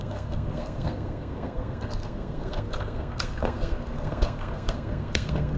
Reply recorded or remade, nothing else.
remade